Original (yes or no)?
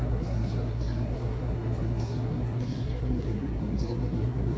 no